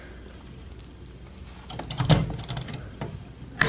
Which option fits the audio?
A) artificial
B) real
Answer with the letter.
B